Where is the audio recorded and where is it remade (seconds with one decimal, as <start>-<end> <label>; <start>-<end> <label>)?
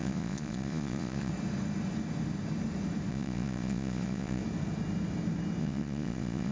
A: 0.0-1.3 remade; 1.3-3.1 recorded; 3.1-4.4 remade; 4.4-5.6 recorded; 5.6-6.5 remade